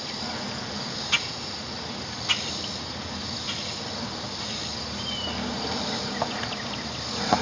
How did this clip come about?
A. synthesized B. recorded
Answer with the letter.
B